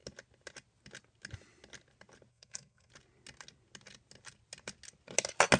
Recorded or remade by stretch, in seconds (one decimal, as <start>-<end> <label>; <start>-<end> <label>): 0.0-2.3 recorded; 2.3-2.9 remade; 2.9-5.6 recorded

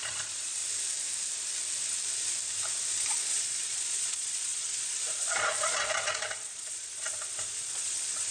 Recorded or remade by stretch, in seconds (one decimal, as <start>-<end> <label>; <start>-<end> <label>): 0.0-0.6 remade; 0.6-3.1 recorded; 3.1-8.3 remade

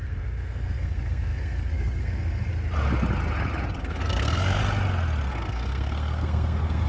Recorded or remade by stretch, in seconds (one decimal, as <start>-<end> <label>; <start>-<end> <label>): 0.0-2.5 remade; 2.5-3.8 recorded; 3.8-4.6 remade; 4.6-5.3 recorded; 5.3-6.9 remade